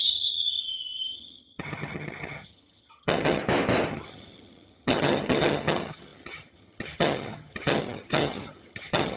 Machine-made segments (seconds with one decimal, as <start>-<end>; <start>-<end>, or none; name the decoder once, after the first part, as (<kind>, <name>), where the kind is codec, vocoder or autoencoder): 0.0-3.4 (vocoder, HiFi-GAN); 3.9-9.2